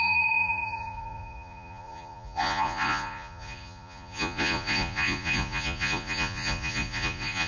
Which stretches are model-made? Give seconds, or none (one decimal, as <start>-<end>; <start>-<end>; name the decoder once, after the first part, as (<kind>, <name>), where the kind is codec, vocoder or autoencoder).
0.0-7.5 (vocoder, Vocos)